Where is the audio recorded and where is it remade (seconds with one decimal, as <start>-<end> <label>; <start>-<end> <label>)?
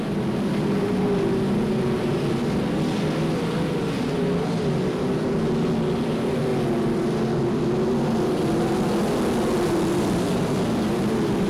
0.0-11.5 recorded